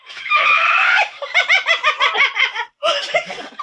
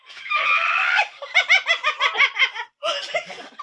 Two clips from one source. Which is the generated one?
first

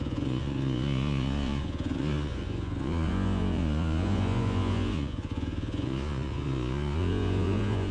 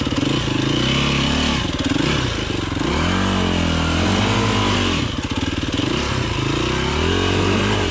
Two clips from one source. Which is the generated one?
first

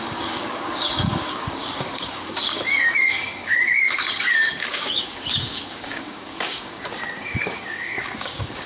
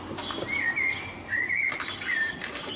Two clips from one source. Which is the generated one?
first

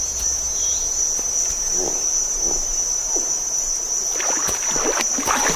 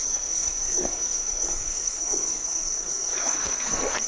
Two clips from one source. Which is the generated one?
second